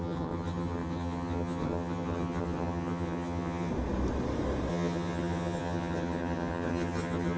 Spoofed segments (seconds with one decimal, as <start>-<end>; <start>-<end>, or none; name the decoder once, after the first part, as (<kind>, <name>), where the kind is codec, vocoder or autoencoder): 0.0-3.7 (vocoder, HiFi-GAN); 4.7-7.4